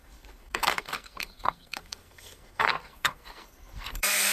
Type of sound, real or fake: fake